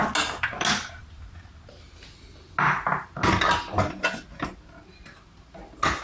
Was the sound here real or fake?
real